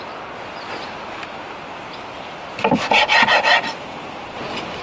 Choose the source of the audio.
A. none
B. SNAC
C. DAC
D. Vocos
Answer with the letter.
A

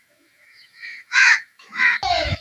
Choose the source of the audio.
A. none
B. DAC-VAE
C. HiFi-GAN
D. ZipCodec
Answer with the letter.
B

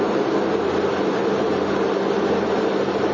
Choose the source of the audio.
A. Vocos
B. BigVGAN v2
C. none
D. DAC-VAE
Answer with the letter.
C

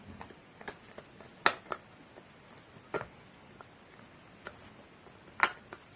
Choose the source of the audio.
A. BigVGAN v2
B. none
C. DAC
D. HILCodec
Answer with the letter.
B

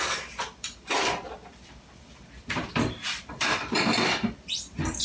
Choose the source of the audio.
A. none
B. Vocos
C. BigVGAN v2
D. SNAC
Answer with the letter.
C